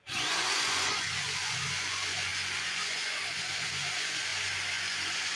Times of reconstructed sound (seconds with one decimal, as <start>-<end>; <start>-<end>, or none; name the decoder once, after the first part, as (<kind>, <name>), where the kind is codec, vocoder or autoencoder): 0.0-5.3 (vocoder, Vocos)